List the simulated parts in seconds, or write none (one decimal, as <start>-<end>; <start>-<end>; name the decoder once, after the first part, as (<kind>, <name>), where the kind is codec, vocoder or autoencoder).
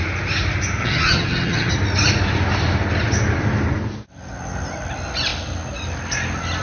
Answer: 0.8-1.7 (vocoder, HiFi-GAN)